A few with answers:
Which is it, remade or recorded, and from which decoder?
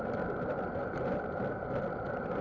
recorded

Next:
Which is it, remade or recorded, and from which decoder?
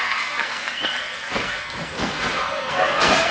remade, codec, SNAC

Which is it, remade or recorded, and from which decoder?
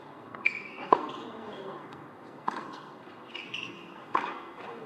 remade, codec, SNAC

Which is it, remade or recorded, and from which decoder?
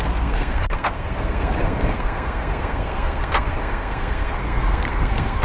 remade, codec, SNAC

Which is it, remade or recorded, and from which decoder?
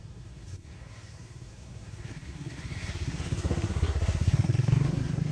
remade, codec, SNAC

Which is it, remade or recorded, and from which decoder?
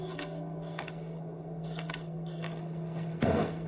remade, codec, SNAC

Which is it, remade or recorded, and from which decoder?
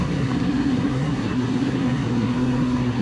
remade, codec, SNAC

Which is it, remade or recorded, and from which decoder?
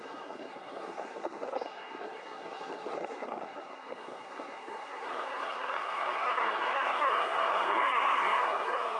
remade, codec, SNAC